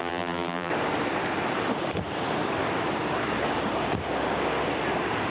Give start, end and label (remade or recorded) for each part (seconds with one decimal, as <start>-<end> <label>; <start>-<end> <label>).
0.0-0.7 remade; 0.7-5.3 recorded